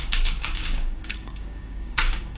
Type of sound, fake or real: fake